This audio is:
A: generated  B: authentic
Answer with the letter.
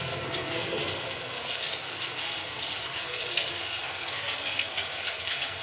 A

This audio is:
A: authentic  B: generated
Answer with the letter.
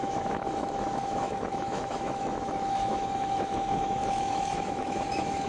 B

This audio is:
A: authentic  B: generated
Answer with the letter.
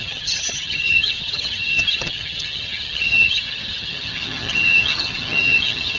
B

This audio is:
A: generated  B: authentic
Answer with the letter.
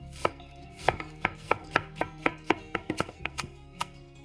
A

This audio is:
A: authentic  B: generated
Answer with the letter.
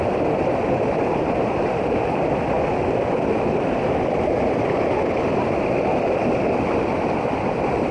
A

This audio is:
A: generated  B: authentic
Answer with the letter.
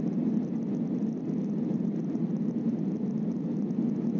B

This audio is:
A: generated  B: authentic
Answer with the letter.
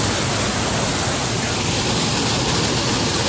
B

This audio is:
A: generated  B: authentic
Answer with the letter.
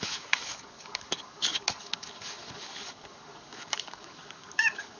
A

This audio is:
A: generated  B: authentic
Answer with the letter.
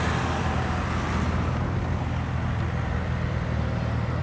B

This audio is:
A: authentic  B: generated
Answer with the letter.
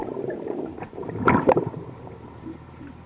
B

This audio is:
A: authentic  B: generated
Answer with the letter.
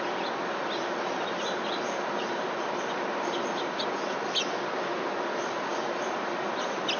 A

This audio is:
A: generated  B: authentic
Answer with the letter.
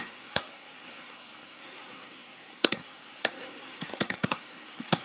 A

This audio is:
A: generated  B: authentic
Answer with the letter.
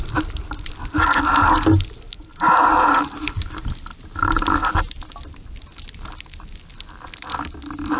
B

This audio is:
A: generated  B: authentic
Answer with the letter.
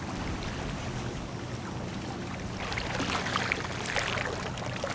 B